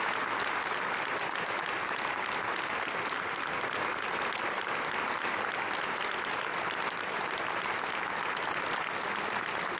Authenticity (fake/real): real